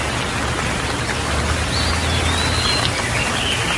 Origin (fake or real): real